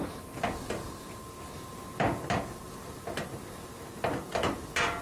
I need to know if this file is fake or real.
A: real